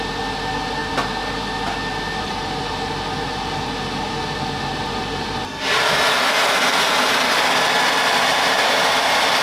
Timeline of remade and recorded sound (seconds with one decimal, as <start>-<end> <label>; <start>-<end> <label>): 0.0-9.4 recorded